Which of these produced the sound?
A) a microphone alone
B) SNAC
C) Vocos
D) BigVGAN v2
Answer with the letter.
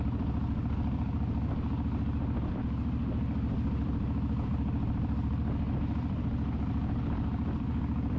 D